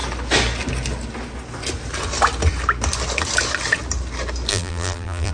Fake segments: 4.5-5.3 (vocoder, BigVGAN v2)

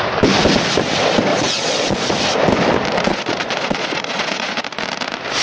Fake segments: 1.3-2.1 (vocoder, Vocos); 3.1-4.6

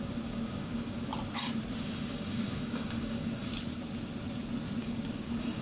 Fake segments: 0.0-1.1 (codec, DAC); 1.8-3.5; 4.8-5.6

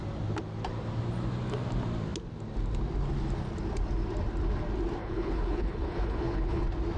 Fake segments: 5.0-6.6 (codec, HILCodec)